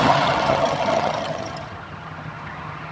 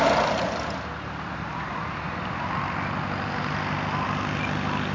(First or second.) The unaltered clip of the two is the second